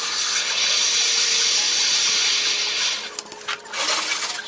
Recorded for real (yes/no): yes